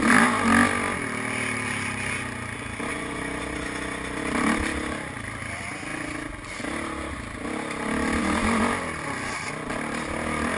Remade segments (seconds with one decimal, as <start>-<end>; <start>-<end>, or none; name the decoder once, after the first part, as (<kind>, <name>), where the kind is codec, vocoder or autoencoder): 2.9-4.2 (vocoder, Vocos)